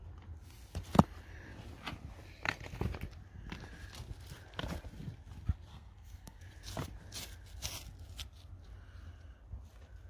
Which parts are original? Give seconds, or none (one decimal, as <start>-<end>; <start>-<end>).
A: 0.0-5.7; 6.4-10.1